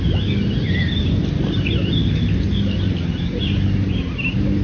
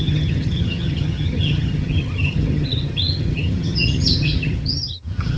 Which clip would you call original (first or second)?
first